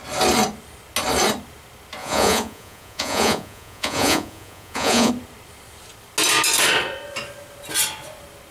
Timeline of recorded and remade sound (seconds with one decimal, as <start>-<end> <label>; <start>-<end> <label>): 0.0-2.0 recorded; 2.0-5.1 remade; 5.1-8.5 recorded